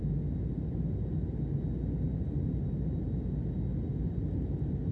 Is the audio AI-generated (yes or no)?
no